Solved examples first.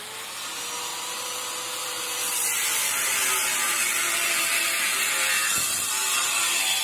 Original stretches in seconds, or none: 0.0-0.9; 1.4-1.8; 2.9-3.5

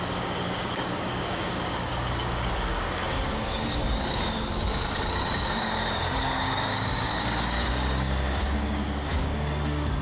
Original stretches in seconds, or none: none

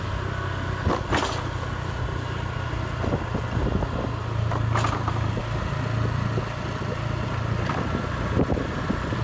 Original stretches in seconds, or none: 0.0-9.2

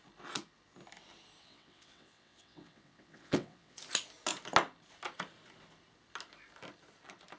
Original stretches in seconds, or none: 0.0-1.4; 3.8-7.4

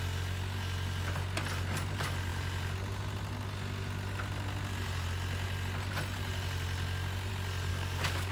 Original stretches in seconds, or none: 0.0-7.7

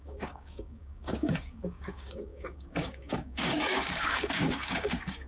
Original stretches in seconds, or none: none

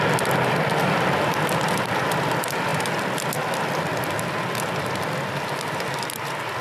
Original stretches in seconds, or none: 0.0-6.6

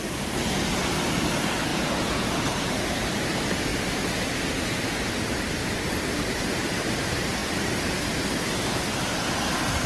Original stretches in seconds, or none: 0.0-1.7; 2.5-9.9